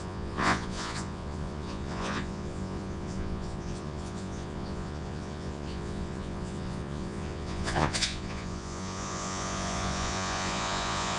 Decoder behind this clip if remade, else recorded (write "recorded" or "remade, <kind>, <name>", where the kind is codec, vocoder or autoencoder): remade, vocoder, Vocos